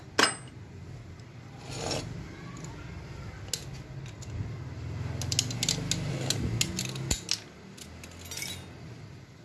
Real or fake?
real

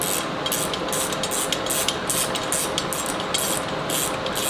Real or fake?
real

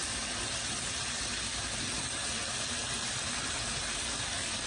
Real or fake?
real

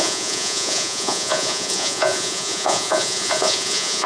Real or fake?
fake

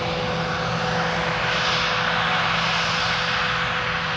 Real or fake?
real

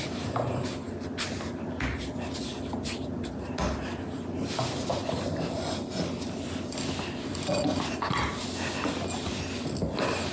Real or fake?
real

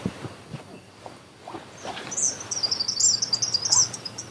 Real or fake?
real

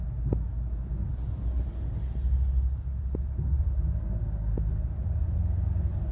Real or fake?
real